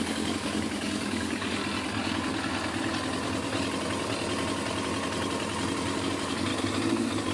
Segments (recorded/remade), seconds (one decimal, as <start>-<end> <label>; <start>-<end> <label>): 0.0-1.6 remade; 1.6-6.0 recorded; 6.0-6.5 remade; 6.5-7.3 recorded